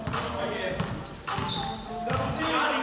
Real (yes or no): yes